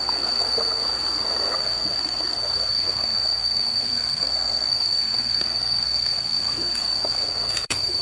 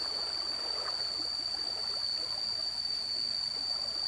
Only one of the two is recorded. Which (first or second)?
second